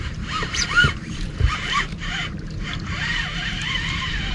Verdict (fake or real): fake